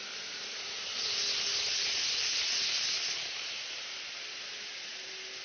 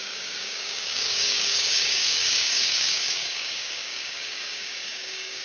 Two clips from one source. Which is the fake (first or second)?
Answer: second